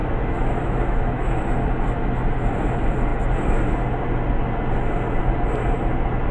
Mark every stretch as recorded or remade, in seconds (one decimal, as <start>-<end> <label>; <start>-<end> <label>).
0.0-1.4 remade; 1.4-6.3 recorded